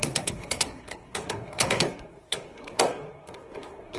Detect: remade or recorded remade